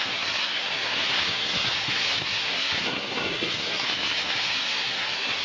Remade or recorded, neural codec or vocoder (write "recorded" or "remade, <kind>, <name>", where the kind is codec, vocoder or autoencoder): remade, codec, SNAC